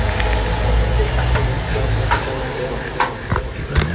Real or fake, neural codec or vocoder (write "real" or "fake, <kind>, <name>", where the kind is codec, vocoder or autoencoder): real